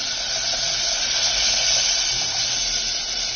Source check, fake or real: real